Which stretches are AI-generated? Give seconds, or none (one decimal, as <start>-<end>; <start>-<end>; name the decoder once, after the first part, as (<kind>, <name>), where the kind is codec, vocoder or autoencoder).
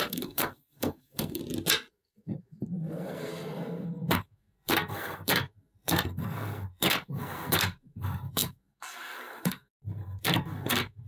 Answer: 0.0-1.4 (codec, SNAC); 1.9-11.1